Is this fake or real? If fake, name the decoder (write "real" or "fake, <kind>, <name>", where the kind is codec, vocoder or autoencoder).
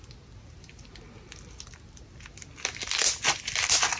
real